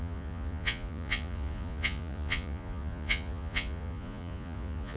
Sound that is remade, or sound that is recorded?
remade